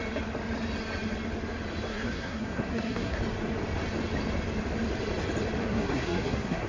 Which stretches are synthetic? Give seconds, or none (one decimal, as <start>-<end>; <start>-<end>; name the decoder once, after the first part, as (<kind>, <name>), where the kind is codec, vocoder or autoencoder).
1.9-3.2 (codec, SNAC); 5.6-6.7